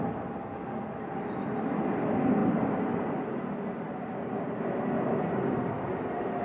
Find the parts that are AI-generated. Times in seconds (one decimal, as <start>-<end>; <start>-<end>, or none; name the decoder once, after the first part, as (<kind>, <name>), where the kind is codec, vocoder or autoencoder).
none